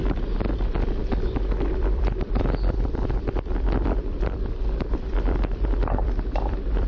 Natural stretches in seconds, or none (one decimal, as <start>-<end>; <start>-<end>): none